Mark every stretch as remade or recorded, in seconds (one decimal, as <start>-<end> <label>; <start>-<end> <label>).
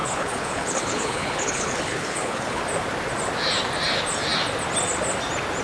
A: 0.0-2.6 remade; 2.6-5.6 recorded